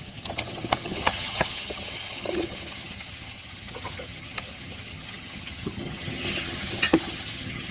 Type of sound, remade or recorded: remade